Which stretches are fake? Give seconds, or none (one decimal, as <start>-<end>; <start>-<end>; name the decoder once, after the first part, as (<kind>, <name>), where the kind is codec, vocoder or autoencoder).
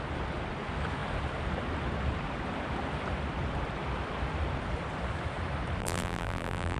5.8-6.8 (vocoder, BigVGAN v2)